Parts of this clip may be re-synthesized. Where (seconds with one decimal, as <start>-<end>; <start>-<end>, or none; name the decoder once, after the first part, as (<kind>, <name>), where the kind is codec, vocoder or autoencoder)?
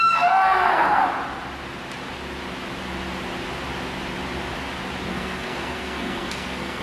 0.0-1.0 (codec, SNAC); 5.1-6.8